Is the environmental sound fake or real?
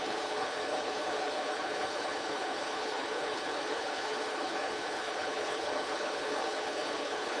fake